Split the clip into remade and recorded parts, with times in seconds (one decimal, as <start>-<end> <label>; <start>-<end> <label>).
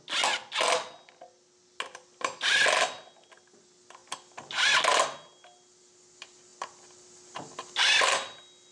0.0-8.7 recorded